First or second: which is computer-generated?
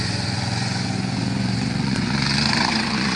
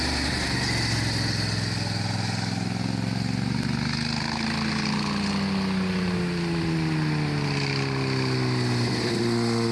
first